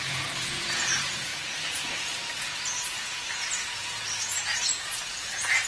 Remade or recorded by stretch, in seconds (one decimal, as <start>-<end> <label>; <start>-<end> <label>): 0.0-5.7 remade